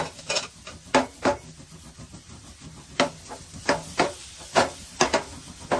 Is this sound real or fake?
real